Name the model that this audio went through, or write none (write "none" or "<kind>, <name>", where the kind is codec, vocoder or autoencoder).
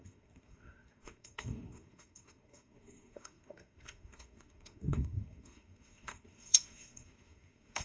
codec, SNAC